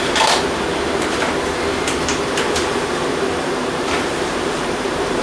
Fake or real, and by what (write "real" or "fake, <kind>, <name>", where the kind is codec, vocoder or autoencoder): fake, vocoder, BigVGAN v2